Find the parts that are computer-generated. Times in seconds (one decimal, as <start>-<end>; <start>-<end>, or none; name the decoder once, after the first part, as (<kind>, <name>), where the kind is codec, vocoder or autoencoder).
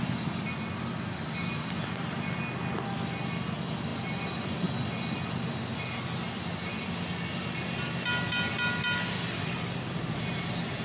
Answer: none